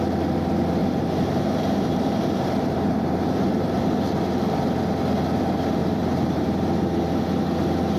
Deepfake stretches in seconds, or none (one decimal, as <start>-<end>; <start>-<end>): 0.8-4.8; 5.8-6.8